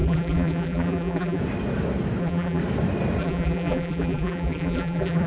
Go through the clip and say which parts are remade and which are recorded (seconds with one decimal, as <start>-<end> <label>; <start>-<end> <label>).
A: 0.0-1.4 remade; 1.4-2.2 recorded; 2.2-2.6 remade; 2.6-3.2 recorded; 3.2-5.3 remade